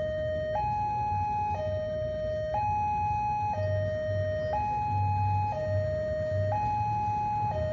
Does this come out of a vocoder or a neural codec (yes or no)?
no